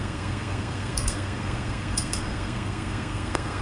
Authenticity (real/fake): fake